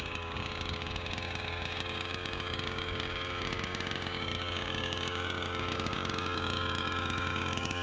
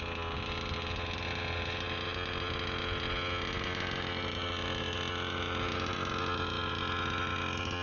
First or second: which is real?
second